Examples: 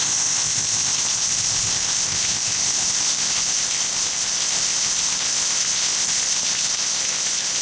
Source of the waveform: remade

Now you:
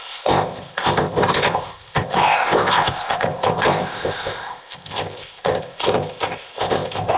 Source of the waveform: remade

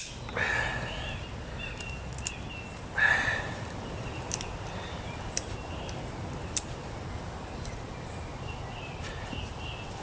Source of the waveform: recorded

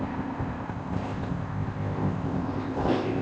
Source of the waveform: remade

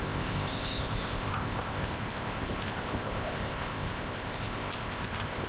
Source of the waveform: remade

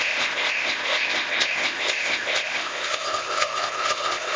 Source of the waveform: remade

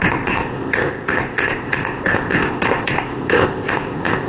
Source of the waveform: remade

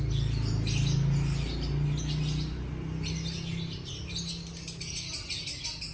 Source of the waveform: recorded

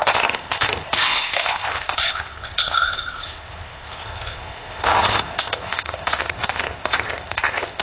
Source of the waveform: remade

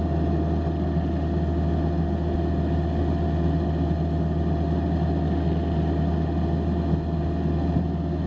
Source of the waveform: recorded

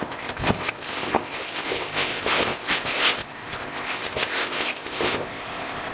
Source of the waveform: remade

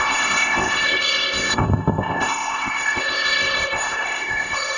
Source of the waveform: remade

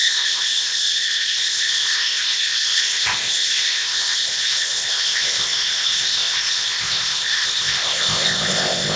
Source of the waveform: remade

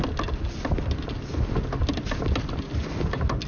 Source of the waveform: recorded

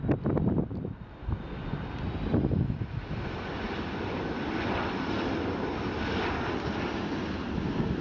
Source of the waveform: recorded